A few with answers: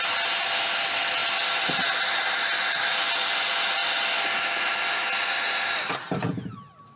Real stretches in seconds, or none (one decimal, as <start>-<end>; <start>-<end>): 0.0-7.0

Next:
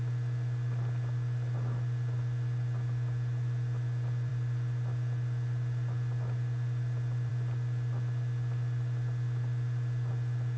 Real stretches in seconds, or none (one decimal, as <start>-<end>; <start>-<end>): 0.0-10.6

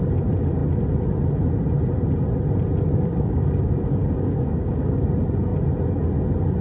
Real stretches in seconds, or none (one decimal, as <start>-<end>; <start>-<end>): 0.0-2.9; 5.1-6.6

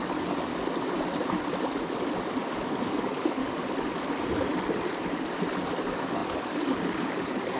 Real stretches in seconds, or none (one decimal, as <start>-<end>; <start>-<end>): 0.5-2.9; 3.4-5.8